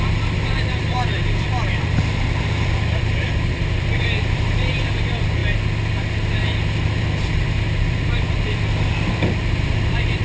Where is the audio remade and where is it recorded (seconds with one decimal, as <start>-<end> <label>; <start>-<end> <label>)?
0.0-5.4 remade; 5.4-7.0 recorded; 7.0-10.2 remade